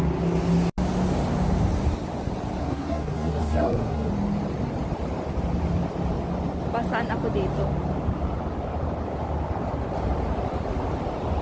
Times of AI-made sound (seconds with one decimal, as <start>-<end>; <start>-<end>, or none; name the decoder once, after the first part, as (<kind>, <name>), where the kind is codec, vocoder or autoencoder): 2.6-4.1 (codec, SNAC)